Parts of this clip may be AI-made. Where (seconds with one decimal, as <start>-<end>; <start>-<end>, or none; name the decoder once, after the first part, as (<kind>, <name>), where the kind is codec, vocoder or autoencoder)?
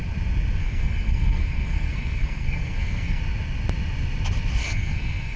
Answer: 0.6-3.2 (codec, SNAC); 4.6-5.4